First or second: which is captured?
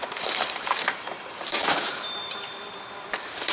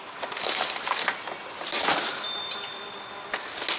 second